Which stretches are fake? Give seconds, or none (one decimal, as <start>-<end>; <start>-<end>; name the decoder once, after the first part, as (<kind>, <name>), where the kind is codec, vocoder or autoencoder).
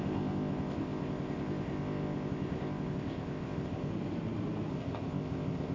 0.0-3.9 (codec, ZipCodec); 4.7-5.7